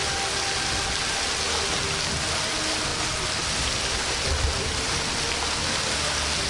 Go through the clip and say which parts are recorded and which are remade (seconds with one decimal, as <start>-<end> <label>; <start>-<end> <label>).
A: 0.0-6.5 recorded